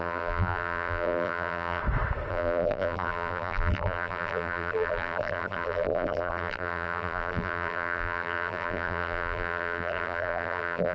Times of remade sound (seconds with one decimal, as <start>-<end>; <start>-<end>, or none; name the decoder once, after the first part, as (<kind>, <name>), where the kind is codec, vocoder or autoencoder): 0.0-1.8 (vocoder, BigVGAN v2); 2.3-10.9